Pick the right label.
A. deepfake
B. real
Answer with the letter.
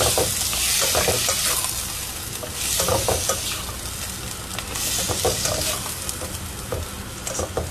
B